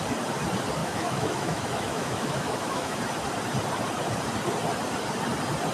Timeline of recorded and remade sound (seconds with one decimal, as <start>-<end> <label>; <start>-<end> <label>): 0.0-0.8 recorded; 0.8-3.0 remade; 3.0-5.7 recorded